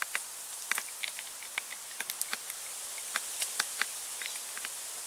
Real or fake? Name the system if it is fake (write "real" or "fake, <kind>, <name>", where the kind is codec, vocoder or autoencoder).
real